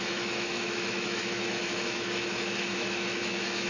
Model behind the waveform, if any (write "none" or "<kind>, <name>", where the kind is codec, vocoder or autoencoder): autoencoder, DAC-VAE